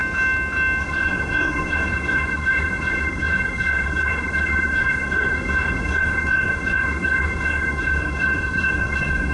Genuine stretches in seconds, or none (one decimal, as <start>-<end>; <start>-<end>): 0.0-0.8